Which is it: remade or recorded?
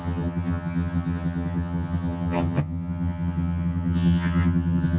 remade